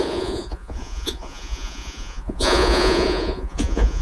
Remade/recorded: remade